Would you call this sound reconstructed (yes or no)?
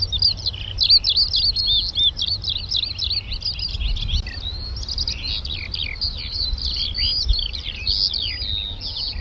no